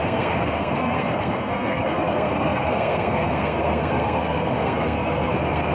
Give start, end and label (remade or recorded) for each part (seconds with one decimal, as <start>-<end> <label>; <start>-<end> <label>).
0.0-5.7 remade